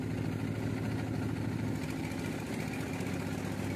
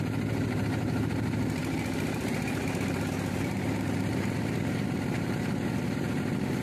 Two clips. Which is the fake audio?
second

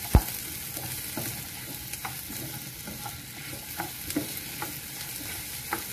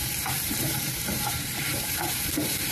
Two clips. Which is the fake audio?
second